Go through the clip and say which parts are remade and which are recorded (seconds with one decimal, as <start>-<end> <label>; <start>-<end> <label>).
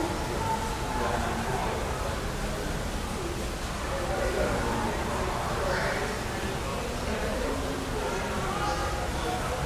0.0-6.7 recorded; 6.7-8.1 remade; 8.1-8.8 recorded; 8.8-9.7 remade